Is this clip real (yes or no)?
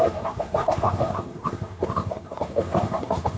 no